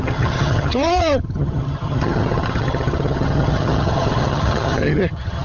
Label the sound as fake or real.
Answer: fake